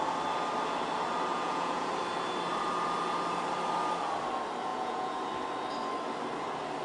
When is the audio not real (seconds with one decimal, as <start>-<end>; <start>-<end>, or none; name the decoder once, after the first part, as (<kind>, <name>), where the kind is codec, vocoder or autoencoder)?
1.3-1.9 (vocoder, Vocos); 4.7-5.2